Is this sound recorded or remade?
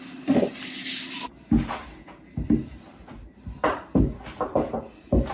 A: recorded